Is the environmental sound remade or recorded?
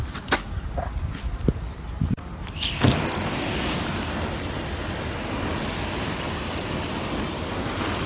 recorded